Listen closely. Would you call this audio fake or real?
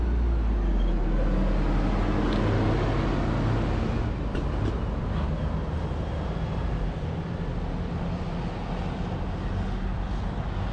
real